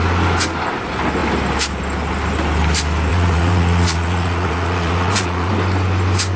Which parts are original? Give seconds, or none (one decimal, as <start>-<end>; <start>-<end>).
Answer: 0.0-3.1; 5.5-6.4